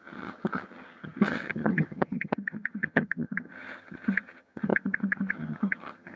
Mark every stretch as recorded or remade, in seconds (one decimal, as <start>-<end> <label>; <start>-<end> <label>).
0.0-6.2 remade